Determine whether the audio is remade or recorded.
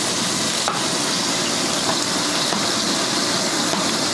recorded